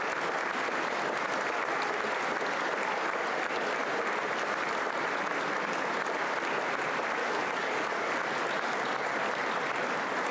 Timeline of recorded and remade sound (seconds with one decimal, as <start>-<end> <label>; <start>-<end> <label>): 0.0-7.2 recorded; 7.2-8.1 remade; 8.1-10.3 recorded